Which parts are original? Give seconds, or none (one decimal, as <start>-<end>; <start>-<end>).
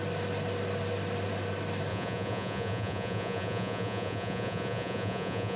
0.0-1.9